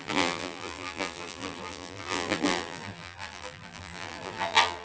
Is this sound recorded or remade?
remade